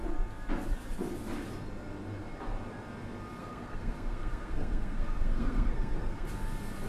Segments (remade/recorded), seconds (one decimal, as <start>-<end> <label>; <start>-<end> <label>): 0.0-3.4 recorded; 3.4-6.3 remade; 6.3-6.9 recorded